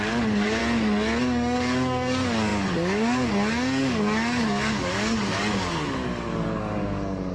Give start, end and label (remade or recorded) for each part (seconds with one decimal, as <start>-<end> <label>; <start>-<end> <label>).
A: 0.0-0.6 remade; 0.6-1.2 recorded; 1.2-7.3 remade

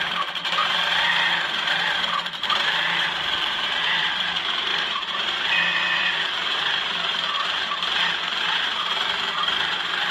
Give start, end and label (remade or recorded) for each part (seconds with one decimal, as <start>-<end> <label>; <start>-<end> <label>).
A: 0.0-10.1 remade

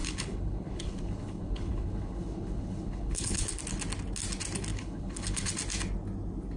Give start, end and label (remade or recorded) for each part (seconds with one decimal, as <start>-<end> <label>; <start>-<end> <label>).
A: 0.0-3.6 remade; 3.6-4.7 recorded; 4.7-5.5 remade; 5.5-6.6 recorded

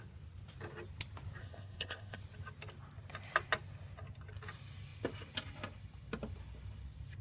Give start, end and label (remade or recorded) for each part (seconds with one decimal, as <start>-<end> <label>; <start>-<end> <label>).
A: 0.0-1.4 recorded; 1.4-2.2 remade; 2.2-7.2 recorded

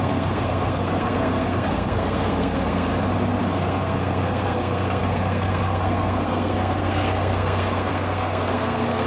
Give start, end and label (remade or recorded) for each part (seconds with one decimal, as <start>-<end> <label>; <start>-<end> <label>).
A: 0.0-2.9 remade; 2.9-3.4 recorded; 3.4-9.1 remade

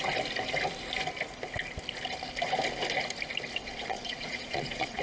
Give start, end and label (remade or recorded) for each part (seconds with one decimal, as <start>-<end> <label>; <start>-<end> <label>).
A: 0.0-3.6 recorded; 3.6-5.0 remade

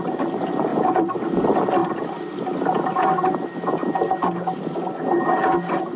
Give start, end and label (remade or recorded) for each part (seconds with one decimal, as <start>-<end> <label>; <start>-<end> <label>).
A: 0.0-0.7 recorded; 0.7-1.4 remade; 1.4-1.8 recorded; 1.8-2.4 remade; 2.4-6.0 recorded

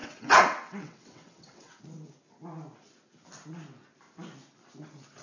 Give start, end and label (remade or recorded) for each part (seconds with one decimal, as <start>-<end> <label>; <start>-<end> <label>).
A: 0.0-1.8 remade; 1.8-5.2 recorded